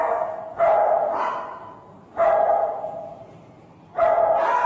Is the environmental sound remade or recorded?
recorded